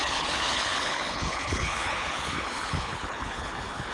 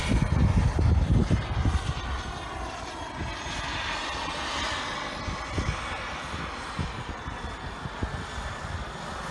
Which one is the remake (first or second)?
first